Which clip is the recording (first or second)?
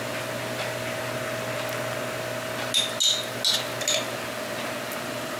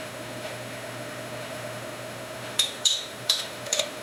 first